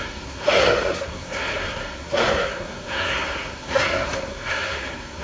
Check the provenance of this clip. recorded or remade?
remade